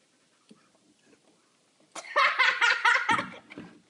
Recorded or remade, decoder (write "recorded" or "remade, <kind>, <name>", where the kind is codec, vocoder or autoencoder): remade, vocoder, BigVGAN v2